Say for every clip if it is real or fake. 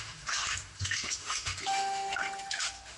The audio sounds fake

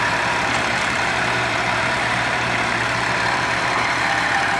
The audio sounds fake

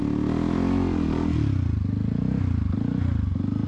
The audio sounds real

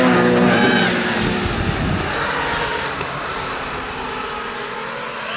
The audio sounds real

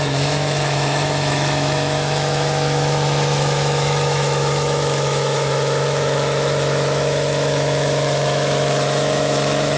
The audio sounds fake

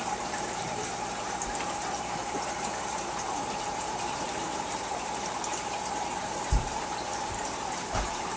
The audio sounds fake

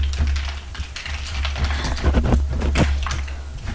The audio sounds real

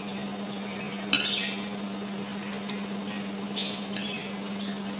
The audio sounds real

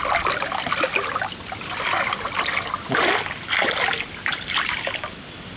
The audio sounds real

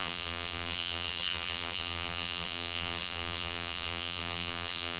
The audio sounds fake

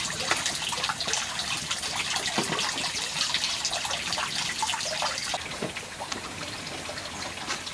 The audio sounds real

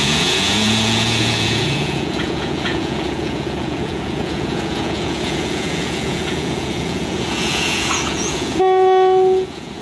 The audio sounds fake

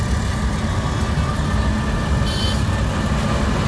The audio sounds real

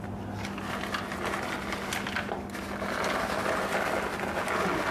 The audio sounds real